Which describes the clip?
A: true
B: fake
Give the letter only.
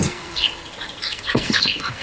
B